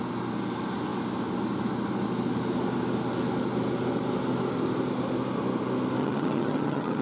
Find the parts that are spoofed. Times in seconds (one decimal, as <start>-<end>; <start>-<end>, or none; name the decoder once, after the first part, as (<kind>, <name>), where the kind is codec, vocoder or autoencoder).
6.0-7.0 (vocoder, HiFi-GAN)